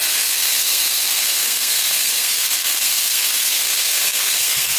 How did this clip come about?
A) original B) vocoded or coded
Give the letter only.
B